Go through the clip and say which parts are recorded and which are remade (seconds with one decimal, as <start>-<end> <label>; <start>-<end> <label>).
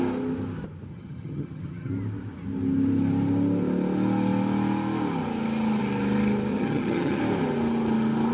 0.0-0.9 recorded; 0.9-1.9 remade; 1.9-6.5 recorded; 6.5-7.2 remade; 7.2-8.3 recorded